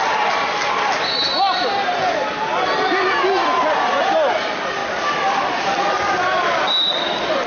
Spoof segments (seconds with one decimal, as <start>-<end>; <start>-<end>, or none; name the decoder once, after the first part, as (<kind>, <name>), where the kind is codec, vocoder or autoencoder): none